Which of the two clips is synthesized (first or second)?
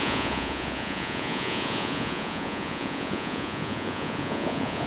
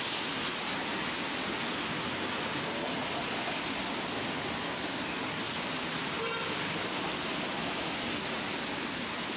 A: first